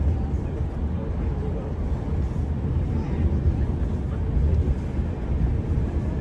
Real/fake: real